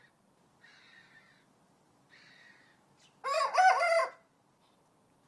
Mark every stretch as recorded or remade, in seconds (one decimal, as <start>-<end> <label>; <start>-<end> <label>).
0.0-5.3 recorded